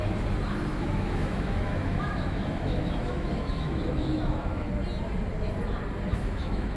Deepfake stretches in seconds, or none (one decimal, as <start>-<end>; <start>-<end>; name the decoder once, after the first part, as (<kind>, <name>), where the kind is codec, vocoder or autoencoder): 0.7-4.7 (autoencoder, DAC-VAE); 6.1-6.8